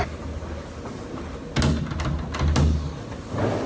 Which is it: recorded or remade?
recorded